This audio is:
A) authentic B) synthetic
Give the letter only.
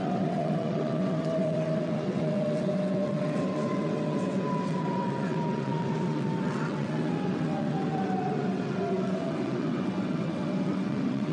B